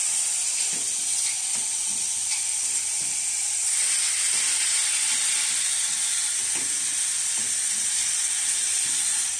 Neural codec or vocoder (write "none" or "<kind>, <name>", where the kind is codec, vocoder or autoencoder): none